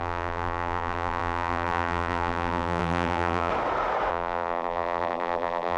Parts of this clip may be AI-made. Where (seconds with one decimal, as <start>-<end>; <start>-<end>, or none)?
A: 0.0-3.5; 4.1-5.8